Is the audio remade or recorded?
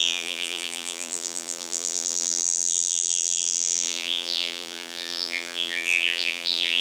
remade